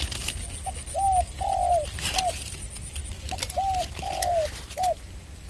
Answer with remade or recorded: recorded